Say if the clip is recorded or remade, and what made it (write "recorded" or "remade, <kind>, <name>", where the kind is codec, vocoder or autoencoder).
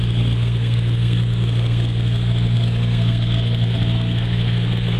remade, codec, SNAC